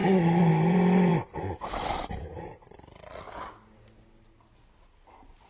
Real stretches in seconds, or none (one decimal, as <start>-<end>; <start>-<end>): 0.0-5.5